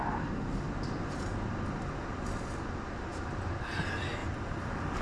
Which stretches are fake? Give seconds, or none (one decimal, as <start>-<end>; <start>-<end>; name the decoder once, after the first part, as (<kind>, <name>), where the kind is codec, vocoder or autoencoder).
none